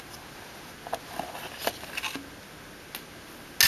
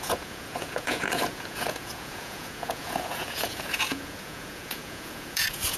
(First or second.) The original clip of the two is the first